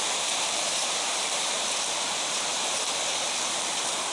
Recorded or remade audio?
remade